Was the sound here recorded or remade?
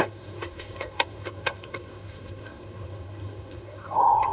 remade